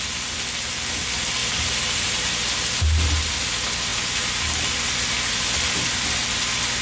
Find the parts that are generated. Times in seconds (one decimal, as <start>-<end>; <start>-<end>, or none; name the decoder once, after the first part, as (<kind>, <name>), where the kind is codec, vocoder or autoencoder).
1.4-2.8 (vocoder, BigVGAN v2)